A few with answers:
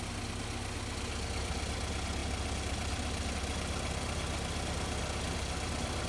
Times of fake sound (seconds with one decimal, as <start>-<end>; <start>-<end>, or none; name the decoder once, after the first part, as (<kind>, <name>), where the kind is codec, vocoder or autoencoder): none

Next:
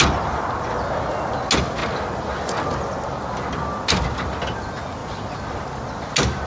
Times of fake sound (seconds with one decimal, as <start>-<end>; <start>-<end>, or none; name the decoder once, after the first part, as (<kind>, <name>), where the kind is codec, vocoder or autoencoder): 5.0-5.6 (vocoder, Vocos)

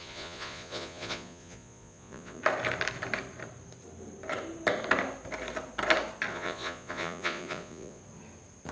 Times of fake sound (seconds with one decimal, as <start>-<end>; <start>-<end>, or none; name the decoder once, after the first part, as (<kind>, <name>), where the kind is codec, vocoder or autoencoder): 0.0-2.4 (vocoder, Vocos); 6.3-8.0

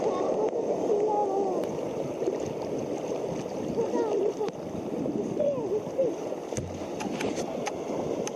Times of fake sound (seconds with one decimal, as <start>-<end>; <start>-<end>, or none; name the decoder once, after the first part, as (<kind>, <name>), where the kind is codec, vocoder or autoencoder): none

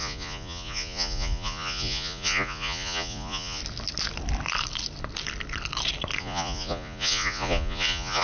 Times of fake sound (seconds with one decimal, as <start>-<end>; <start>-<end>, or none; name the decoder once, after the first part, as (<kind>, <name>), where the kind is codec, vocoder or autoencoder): 0.0-3.6 (vocoder, Vocos); 6.2-8.2